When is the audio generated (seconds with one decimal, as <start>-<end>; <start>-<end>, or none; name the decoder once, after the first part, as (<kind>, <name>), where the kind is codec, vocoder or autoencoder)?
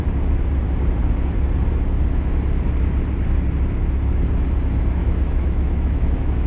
5.0-6.5 (autoencoder, DAC-VAE)